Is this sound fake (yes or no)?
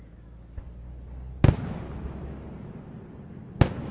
no